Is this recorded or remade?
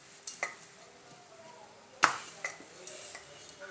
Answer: recorded